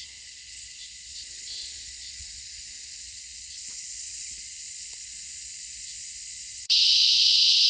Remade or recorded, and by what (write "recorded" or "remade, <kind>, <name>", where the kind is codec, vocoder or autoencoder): remade, vocoder, Vocos